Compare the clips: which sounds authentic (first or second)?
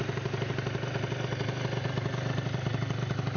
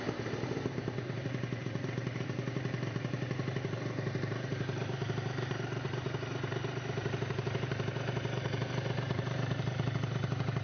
first